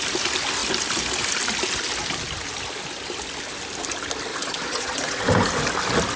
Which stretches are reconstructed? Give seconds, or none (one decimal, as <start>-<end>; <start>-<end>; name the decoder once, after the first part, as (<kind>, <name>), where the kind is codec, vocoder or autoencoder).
4.3-5.2 (vocoder, Vocos)